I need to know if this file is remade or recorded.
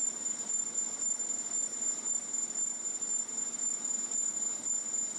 recorded